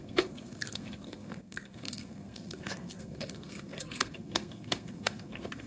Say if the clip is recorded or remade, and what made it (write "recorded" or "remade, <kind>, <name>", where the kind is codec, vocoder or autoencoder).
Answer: remade, codec, SNAC